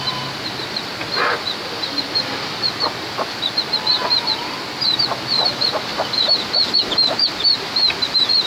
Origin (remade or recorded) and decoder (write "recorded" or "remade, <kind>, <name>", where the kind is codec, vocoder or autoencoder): recorded